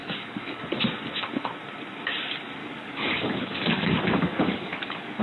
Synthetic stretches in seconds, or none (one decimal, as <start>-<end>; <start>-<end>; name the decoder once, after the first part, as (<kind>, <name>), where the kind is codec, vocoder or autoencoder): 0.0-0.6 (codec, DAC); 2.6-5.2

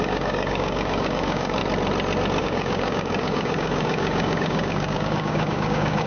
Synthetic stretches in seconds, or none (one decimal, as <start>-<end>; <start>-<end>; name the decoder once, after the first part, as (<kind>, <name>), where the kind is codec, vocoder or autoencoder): 0.0-1.6 (codec, DAC); 2.4-6.1

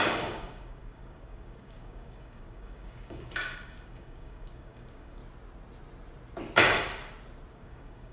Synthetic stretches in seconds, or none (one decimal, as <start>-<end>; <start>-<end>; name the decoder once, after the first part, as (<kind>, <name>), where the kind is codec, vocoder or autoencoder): 0.0-5.2 (codec, DAC); 7.5-8.1